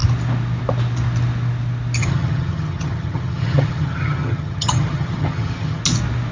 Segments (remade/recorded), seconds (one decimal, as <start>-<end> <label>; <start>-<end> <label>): 0.0-2.0 recorded; 2.0-5.8 remade; 5.8-6.3 recorded